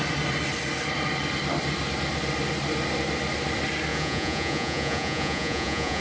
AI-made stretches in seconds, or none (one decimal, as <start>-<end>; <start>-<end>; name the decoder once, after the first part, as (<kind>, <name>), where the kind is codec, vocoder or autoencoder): 3.9-6.0 (vocoder, Vocos)